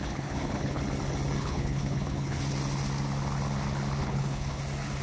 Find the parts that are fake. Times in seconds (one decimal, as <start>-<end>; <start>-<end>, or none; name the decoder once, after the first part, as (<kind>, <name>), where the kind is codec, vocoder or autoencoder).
0.0-0.8 (codec, HILCodec); 1.4-2.4; 4.0-4.6